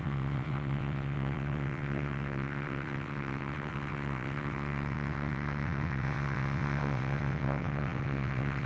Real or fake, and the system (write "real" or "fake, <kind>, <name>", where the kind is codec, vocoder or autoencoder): fake, vocoder, WaveNeXt